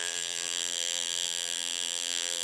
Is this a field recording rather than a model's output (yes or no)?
no